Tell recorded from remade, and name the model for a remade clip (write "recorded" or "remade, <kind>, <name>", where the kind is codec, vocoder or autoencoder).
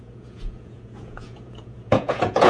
remade, vocoder, Vocos